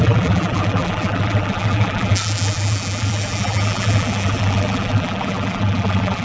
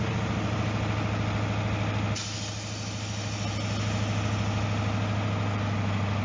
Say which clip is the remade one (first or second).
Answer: first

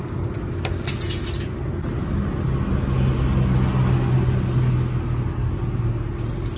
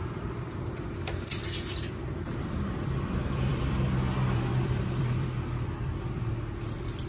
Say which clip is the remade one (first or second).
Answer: second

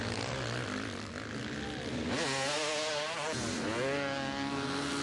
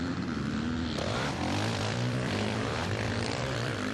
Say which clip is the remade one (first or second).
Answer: second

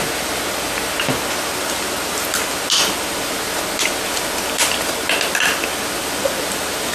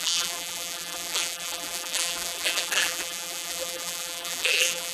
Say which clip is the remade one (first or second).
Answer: second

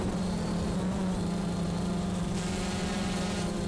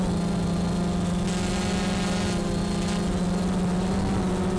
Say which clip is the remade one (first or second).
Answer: first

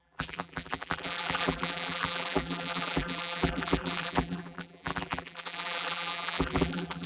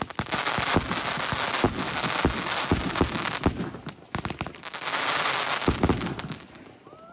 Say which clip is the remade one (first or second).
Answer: first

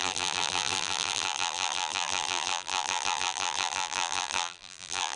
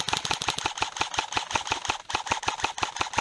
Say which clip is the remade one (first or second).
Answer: first